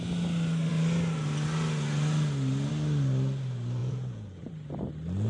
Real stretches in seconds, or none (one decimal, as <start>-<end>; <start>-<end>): 0.0-3.8; 4.5-5.3